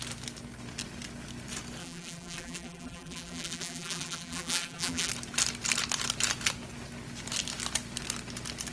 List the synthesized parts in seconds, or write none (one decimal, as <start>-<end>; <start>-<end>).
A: 1.8-5.1